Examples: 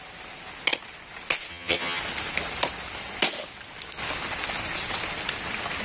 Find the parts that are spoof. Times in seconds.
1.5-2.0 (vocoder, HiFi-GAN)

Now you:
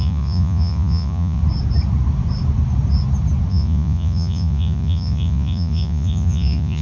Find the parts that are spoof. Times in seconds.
0.0-1.4 (vocoder, Vocos); 3.5-6.8

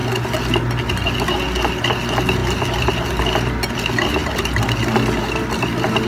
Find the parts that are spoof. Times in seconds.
none

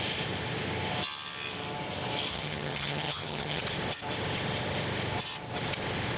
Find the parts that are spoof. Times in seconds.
2.3-3.6 (vocoder, HiFi-GAN)

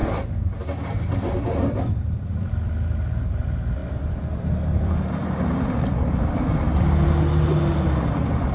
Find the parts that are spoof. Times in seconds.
0.0-2.3 (vocoder, BigVGAN v2); 4.7-6.4

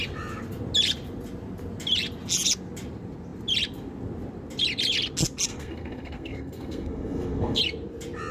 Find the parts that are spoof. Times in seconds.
5.5-7.6 (codec, SNAC)

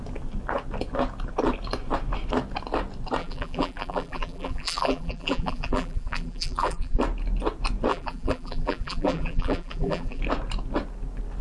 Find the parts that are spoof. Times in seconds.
3.2-7.0 (vocoder, BigVGAN v2); 7.9-10.2

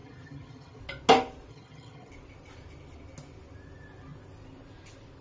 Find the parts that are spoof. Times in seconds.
0.0-0.8 (vocoder, HiFi-GAN); 1.5-2.1